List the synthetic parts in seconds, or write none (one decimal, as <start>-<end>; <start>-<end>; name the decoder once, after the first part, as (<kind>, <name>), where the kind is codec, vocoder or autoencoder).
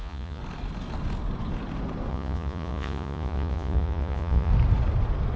0.0-0.4 (vocoder, Vocos); 2.1-4.5